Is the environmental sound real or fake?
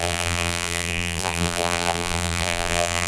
fake